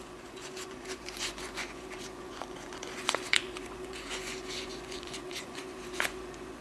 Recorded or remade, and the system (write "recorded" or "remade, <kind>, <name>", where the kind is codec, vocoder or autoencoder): remade, vocoder, Vocos